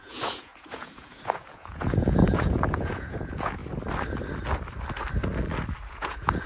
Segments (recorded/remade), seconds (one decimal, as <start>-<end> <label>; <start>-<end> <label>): 0.0-3.6 remade; 3.6-5.9 recorded; 5.9-6.5 remade